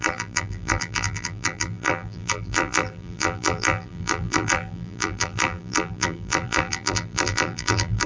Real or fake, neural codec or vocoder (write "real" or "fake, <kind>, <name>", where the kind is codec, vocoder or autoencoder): fake, vocoder, BigVGAN v2